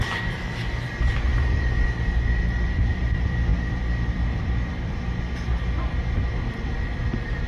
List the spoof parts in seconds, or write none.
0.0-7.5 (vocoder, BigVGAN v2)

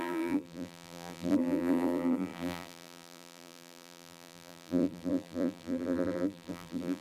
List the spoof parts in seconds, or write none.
0.0-7.0 (vocoder, BigVGAN v2)

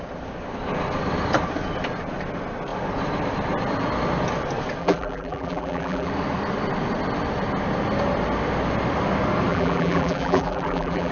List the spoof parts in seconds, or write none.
4.8-6.1 (vocoder, BigVGAN v2); 9.5-11.1

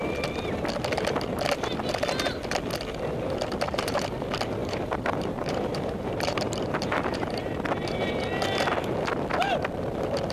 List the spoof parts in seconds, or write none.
4.6-8.2 (vocoder, BigVGAN v2)

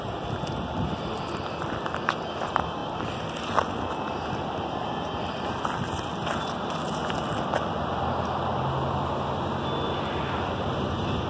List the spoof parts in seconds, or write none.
none

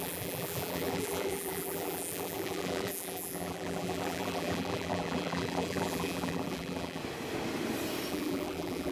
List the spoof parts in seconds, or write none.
0.0-7.0 (vocoder, BigVGAN v2); 8.1-8.9

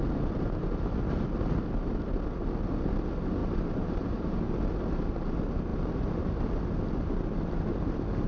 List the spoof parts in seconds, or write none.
3.4-4.5 (vocoder, BigVGAN v2); 5.7-6.2